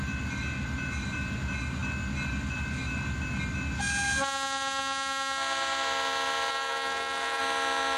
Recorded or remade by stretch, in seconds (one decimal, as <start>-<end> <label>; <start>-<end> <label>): 0.0-6.5 recorded; 6.5-7.4 remade; 7.4-8.0 recorded